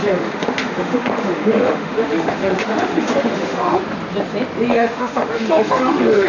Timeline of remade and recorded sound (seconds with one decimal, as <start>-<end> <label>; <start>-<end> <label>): 0.0-3.8 remade; 3.8-4.7 recorded; 4.7-6.3 remade